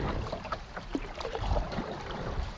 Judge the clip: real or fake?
fake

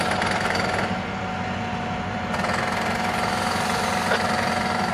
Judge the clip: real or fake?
real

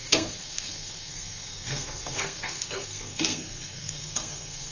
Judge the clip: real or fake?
fake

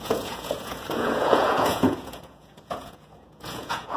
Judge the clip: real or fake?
fake